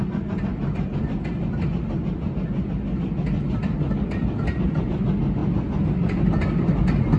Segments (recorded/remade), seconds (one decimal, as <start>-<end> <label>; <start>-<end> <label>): 0.0-7.2 recorded

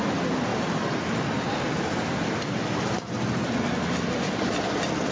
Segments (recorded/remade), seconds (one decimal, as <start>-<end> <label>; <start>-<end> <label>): 0.0-5.1 recorded

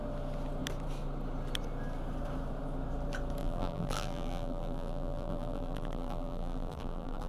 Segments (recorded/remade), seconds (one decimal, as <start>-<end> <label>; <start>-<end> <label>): 0.0-3.4 recorded; 3.4-7.3 remade